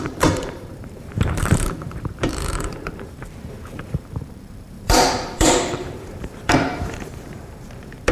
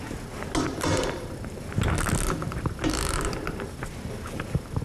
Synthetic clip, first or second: first